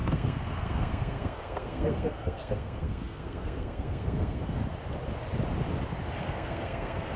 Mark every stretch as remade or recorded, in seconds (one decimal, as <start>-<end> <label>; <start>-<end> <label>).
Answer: 0.0-4.6 remade; 4.6-6.2 recorded; 6.2-7.2 remade